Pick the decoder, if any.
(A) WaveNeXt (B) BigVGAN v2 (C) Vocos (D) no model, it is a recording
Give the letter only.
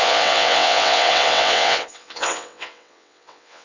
A